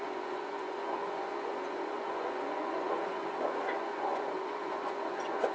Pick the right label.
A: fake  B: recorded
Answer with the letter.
A